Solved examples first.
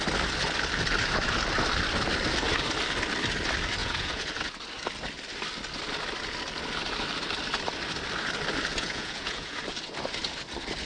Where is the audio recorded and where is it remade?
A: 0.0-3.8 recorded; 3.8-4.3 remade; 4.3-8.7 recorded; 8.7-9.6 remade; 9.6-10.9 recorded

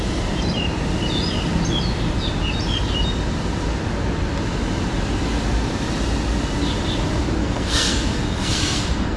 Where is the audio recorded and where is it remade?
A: 0.0-7.4 recorded; 7.4-9.2 remade

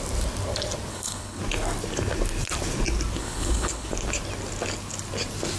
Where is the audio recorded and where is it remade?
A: 0.0-0.9 recorded; 0.9-1.4 remade; 1.4-3.2 recorded; 3.2-3.9 remade; 3.9-5.6 recorded

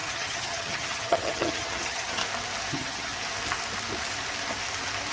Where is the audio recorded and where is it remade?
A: 0.0-2.2 remade; 2.2-2.7 recorded; 2.7-3.1 remade; 3.1-5.1 recorded

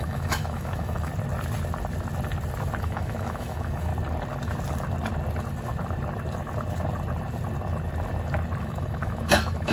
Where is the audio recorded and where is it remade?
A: 0.0-1.1 remade; 1.1-2.8 recorded; 2.8-3.9 remade; 3.9-8.6 recorded; 8.6-9.7 remade

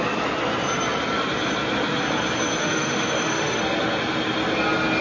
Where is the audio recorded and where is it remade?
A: 0.0-2.6 recorded; 2.6-3.6 remade; 3.6-5.0 recorded